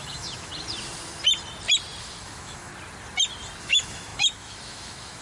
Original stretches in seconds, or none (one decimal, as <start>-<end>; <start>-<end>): 0.5-2.0; 2.7-3.6